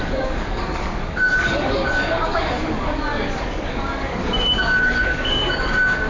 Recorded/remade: remade